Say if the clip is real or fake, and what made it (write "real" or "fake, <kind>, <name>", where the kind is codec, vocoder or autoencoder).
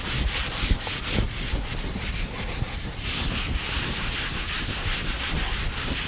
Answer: real